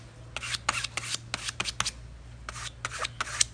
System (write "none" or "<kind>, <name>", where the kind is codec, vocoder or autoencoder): none